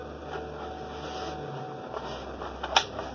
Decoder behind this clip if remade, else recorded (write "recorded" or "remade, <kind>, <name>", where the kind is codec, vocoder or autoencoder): recorded